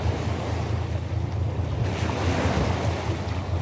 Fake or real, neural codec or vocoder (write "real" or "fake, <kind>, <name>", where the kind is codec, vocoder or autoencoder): real